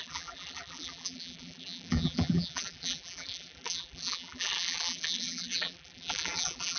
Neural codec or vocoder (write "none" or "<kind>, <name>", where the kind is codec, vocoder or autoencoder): vocoder, BigVGAN v2